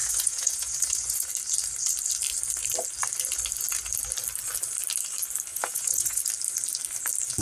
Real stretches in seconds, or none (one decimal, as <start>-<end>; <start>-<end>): 1.3-5.5; 6.2-7.4

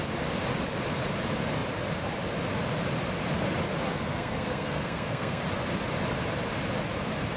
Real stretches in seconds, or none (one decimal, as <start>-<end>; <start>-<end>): 0.0-3.9; 5.4-7.4

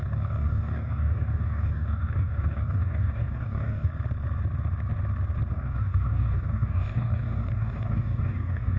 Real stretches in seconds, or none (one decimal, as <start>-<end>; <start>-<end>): 3.9-5.5

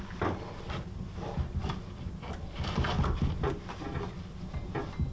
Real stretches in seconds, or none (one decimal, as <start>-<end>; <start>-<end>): 0.0-5.1

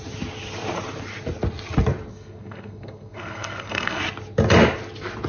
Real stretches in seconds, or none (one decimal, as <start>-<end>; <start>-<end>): 0.0-2.1; 4.0-5.3